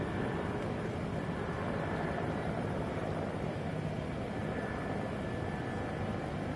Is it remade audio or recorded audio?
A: recorded